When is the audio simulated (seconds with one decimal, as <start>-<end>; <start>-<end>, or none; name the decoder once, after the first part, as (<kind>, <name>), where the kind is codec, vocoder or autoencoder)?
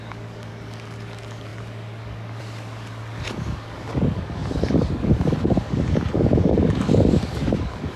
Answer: 0.0-8.0 (codec, DAC)